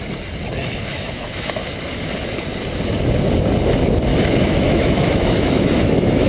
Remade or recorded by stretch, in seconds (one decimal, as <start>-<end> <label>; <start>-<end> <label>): 0.0-0.9 recorded; 0.9-1.8 remade; 1.8-4.1 recorded; 4.1-6.3 remade